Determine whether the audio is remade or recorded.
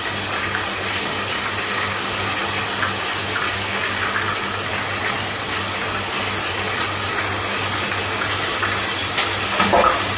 recorded